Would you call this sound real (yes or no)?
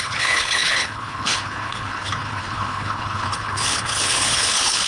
no